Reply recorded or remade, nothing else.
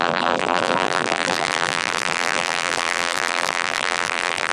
remade